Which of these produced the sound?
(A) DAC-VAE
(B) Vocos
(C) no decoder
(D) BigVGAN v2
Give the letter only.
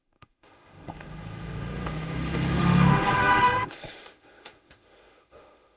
A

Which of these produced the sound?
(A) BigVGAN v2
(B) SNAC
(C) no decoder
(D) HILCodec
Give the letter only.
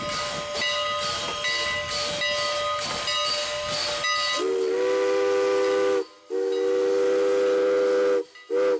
C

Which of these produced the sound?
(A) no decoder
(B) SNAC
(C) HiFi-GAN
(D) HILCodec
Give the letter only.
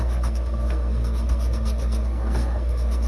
B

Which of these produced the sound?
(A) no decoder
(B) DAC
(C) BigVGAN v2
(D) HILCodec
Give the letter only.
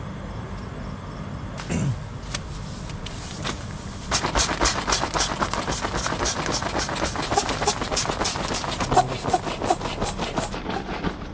A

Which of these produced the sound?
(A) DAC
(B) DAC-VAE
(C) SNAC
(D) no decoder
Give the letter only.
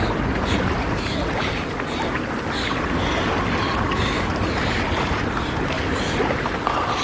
D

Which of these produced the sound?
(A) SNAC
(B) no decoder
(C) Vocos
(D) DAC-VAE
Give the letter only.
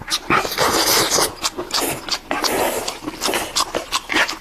B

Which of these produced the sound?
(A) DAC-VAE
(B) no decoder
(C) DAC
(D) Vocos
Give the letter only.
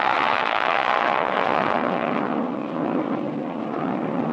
D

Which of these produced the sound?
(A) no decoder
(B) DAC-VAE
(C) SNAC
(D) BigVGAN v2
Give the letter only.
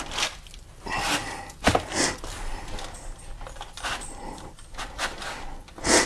A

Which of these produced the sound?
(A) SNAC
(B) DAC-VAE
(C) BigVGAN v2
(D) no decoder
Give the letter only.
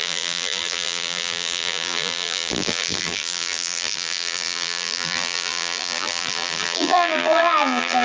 C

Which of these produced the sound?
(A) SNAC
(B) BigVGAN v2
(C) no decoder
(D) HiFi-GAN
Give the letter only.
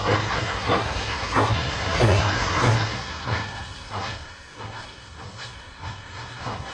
A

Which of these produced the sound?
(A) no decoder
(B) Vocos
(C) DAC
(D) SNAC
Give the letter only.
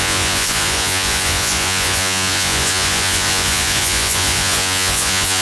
B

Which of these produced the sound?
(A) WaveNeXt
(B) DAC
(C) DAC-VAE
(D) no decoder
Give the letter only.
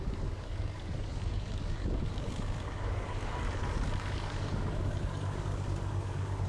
B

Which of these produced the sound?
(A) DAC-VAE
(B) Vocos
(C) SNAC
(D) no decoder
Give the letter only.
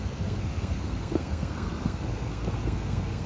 C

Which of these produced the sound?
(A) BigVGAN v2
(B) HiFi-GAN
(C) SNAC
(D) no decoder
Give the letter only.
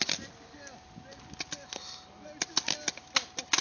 D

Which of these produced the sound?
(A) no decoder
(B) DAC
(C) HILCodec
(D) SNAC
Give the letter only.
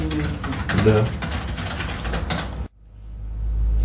A